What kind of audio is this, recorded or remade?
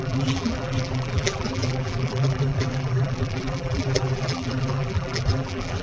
remade